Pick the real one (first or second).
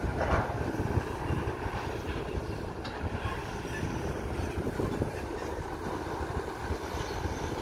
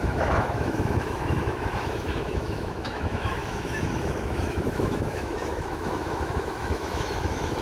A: first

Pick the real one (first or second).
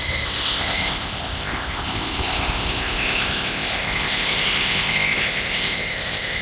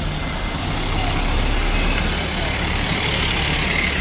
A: second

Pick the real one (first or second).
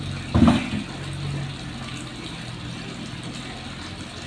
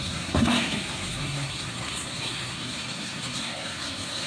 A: first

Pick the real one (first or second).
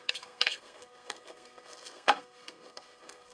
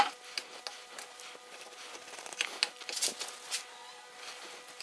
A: second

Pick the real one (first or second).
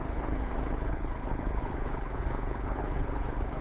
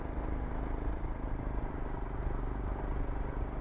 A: second